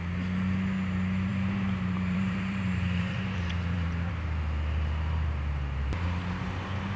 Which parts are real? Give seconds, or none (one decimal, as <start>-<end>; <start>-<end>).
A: 0.0-1.3; 4.1-7.0